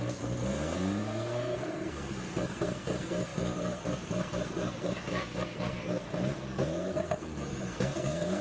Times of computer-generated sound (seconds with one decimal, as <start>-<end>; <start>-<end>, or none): 0.0-8.4